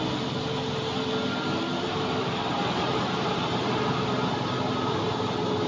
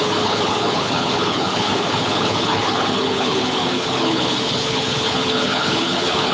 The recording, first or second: first